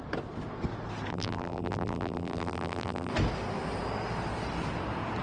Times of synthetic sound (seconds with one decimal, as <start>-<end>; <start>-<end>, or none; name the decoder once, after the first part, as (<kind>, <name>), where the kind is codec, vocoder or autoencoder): 1.1-3.1 (vocoder, BigVGAN v2)